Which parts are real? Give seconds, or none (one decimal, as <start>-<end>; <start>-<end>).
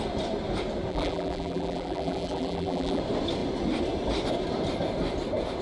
0.0-0.9; 3.0-5.6